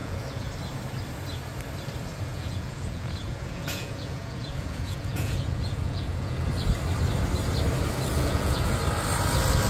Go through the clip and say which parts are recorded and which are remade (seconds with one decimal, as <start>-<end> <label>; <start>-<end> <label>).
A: 0.0-0.5 remade; 0.5-2.3 recorded; 2.3-6.5 remade; 6.5-8.1 recorded; 8.1-8.7 remade; 8.7-9.7 recorded